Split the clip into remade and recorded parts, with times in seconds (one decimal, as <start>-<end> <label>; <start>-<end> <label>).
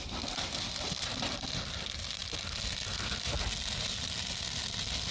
0.0-2.2 remade; 2.2-5.1 recorded